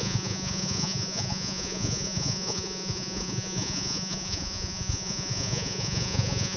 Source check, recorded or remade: remade